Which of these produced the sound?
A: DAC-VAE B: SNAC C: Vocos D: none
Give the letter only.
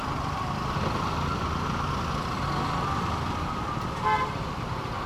D